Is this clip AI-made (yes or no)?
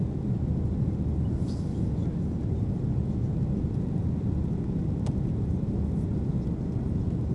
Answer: no